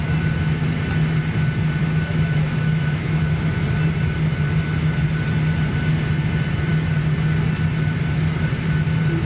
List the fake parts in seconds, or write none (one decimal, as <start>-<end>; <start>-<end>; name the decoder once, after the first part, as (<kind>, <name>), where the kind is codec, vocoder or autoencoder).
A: 1.8-3.6 (autoencoder, DAC-VAE)